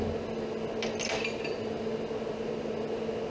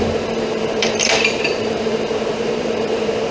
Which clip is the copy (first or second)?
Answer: second